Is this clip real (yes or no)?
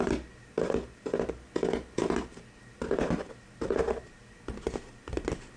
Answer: yes